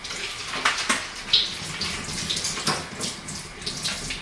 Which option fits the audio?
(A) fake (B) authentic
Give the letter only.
B